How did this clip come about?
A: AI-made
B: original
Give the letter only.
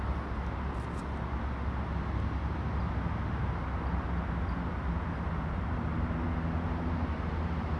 B